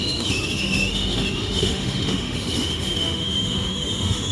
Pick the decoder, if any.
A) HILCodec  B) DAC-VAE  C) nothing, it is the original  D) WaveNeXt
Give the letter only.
B